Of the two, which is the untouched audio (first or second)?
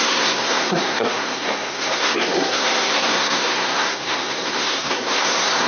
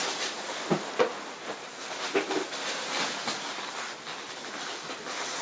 second